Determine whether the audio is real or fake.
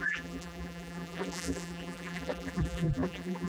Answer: fake